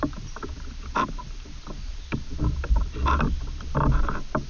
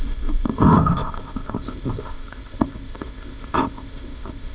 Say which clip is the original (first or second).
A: first